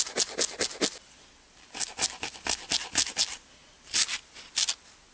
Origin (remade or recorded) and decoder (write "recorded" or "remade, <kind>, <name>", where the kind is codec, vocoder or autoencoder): recorded